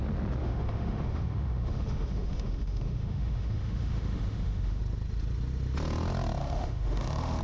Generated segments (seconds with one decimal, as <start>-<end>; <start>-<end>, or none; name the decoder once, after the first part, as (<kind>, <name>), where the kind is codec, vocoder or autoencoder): 0.4-4.8 (autoencoder, DAC-VAE); 6.4-7.4